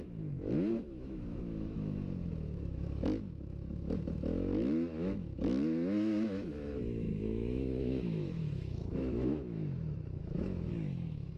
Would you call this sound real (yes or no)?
no